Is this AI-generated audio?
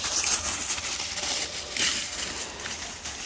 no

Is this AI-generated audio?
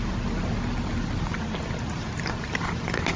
no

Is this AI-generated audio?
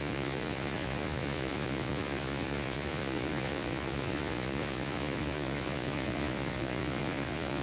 yes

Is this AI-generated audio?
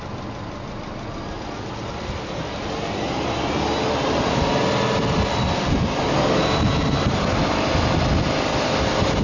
no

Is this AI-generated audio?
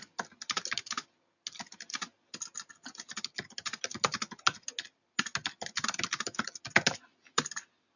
no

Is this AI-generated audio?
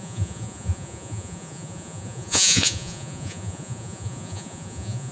yes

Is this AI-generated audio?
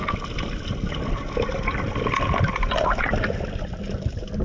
no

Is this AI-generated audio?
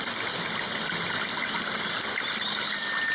no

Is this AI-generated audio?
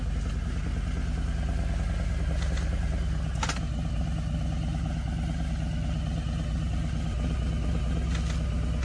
no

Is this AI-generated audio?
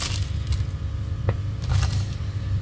no